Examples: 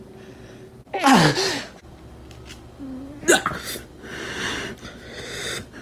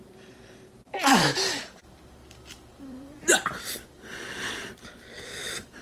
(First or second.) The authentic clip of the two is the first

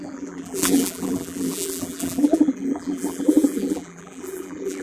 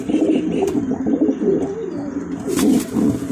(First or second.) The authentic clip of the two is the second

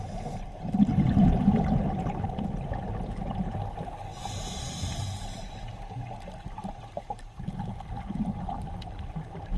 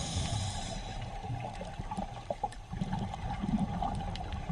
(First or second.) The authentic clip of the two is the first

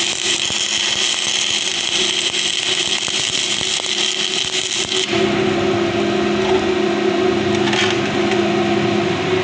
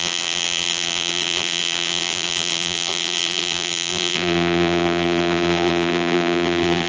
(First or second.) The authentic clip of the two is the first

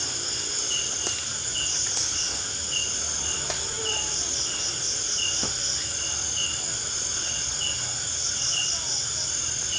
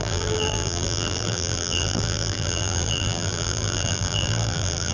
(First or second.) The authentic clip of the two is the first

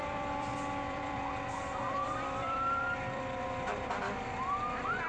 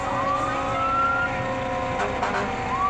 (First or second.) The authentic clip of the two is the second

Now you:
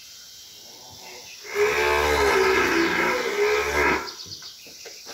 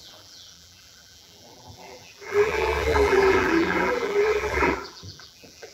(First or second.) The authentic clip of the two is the first